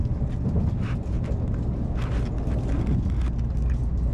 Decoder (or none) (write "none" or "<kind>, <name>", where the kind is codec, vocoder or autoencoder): none